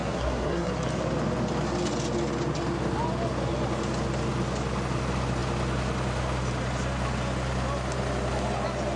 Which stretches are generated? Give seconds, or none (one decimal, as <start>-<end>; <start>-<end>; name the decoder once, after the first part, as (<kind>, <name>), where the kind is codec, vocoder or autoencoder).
0.0-0.7 (codec, SNAC)